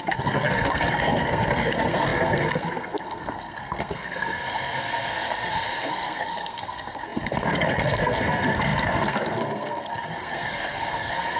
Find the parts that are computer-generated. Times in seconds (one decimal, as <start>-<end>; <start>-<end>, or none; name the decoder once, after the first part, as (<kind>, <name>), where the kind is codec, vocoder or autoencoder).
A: 0.0-11.4 (codec, SNAC)